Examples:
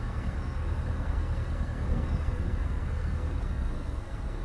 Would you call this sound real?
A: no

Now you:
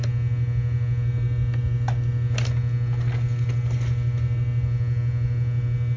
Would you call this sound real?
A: yes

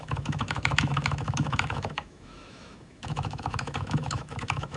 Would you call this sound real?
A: no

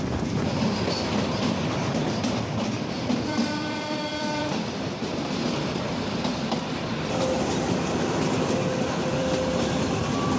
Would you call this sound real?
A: no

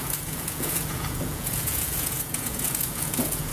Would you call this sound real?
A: no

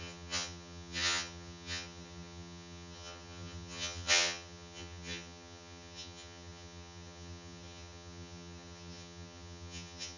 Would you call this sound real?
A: no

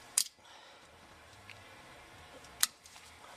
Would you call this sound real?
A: no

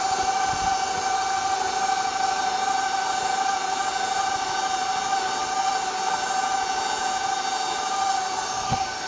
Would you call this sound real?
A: yes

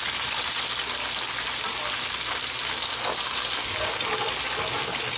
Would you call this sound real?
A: yes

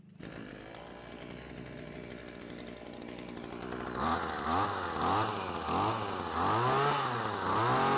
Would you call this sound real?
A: yes